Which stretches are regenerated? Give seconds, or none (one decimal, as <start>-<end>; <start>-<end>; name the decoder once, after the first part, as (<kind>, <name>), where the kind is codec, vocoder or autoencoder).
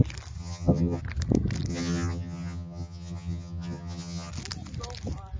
0.4-1.0 (vocoder, HiFi-GAN); 1.7-4.3